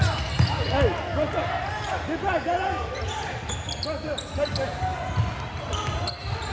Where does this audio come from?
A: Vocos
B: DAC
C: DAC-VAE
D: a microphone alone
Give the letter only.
D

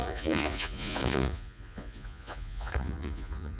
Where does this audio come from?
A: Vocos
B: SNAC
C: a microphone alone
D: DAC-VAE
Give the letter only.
A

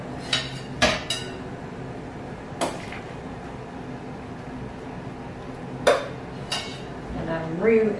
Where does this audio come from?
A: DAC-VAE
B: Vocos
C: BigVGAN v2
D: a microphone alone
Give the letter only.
D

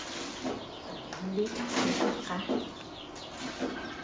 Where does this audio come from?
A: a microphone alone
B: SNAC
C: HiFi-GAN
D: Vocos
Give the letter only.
A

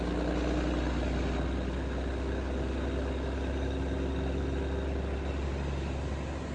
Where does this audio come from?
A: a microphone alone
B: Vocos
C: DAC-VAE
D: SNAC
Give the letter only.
A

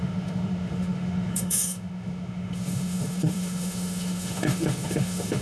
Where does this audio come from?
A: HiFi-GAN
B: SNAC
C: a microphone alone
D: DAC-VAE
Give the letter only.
D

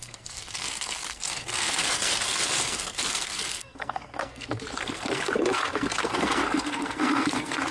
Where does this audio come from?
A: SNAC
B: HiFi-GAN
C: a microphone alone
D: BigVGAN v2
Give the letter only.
A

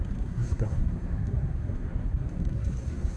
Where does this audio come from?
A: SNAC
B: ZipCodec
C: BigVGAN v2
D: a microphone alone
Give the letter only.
A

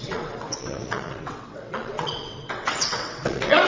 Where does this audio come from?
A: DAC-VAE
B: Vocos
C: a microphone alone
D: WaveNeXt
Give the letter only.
D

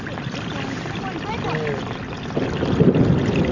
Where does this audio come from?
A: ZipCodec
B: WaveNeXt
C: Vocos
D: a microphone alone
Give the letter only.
D